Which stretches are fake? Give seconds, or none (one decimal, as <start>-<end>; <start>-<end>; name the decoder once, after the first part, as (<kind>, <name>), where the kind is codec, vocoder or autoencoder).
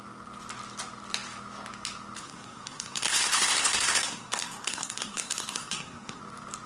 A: 2.2-6.2 (codec, SNAC)